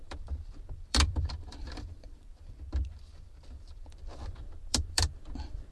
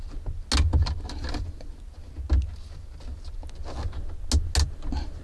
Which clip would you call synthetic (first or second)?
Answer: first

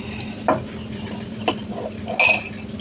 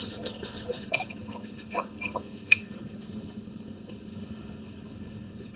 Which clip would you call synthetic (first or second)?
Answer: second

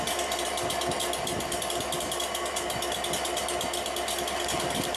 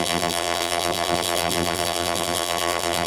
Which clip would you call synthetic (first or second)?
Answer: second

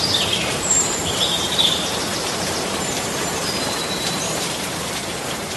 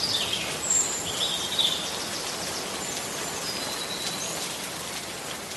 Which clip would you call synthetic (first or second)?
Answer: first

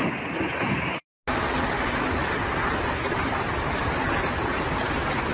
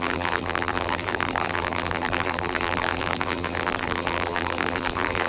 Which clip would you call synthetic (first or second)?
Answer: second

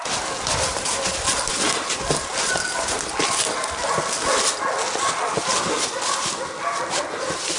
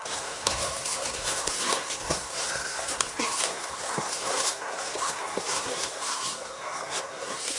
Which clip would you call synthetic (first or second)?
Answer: second